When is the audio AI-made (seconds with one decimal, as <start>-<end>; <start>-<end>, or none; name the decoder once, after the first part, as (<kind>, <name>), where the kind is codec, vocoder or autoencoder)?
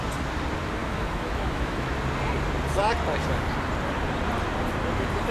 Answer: 0.8-1.9 (autoencoder, DAC-VAE)